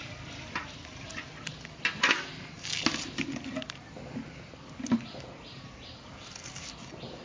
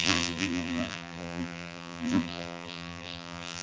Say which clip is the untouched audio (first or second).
first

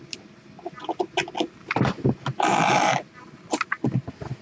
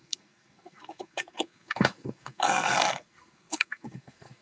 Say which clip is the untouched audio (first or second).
first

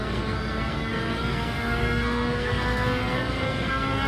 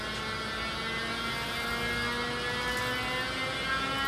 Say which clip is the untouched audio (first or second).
second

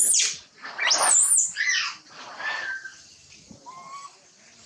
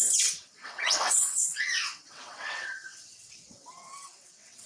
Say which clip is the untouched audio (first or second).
first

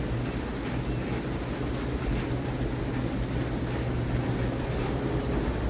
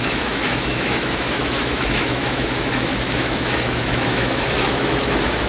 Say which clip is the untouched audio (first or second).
first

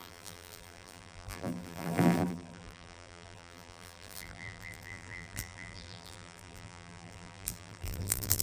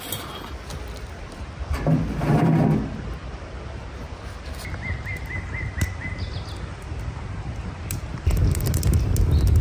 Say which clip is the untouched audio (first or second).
second